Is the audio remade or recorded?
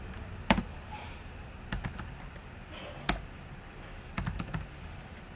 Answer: recorded